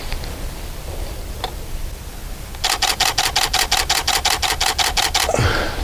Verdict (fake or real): fake